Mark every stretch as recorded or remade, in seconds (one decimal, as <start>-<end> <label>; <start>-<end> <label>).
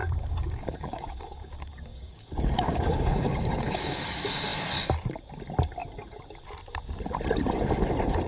0.0-4.1 remade; 4.1-8.3 recorded